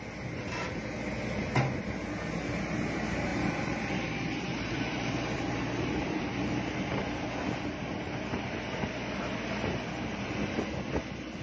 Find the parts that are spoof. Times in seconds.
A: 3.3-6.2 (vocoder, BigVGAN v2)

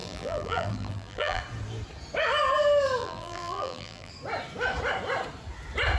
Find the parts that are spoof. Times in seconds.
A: 0.0-1.4 (vocoder, BigVGAN v2); 3.0-4.1

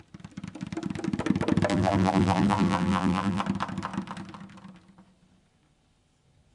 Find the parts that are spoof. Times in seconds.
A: 1.7-3.4 (vocoder, BigVGAN v2)

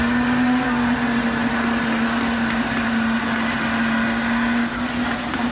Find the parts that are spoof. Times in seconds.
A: none